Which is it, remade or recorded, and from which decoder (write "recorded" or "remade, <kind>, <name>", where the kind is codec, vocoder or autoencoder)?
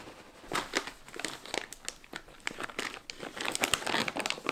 recorded